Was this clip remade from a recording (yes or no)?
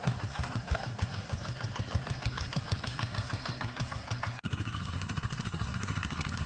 yes